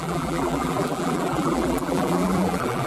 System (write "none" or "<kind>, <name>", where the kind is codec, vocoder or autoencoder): vocoder, BigVGAN v2